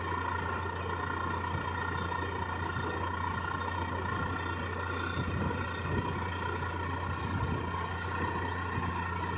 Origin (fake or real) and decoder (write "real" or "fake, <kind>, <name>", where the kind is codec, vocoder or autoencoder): real